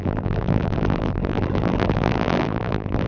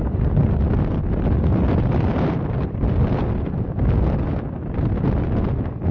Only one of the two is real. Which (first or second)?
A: second